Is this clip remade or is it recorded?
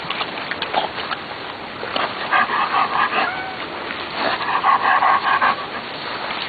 recorded